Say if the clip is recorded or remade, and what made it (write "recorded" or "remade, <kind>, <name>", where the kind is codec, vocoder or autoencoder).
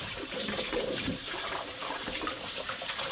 remade, vocoder, BigVGAN v2